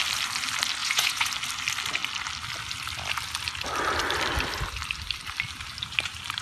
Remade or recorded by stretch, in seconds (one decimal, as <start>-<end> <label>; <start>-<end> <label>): 0.0-0.8 recorded; 0.8-1.3 remade; 1.3-6.4 recorded